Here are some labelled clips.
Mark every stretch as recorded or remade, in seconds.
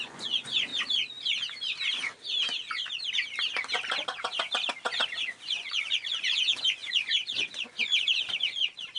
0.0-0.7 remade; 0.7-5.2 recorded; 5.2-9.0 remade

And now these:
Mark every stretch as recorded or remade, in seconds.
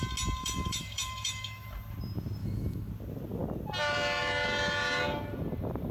0.0-0.4 recorded; 0.4-1.7 remade; 1.7-2.4 recorded; 2.4-2.9 remade; 2.9-5.9 recorded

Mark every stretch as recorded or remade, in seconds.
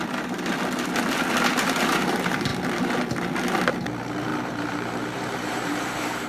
0.0-4.3 recorded; 4.3-6.3 remade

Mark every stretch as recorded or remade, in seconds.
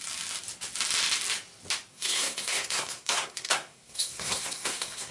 0.0-1.9 recorded; 1.9-5.1 remade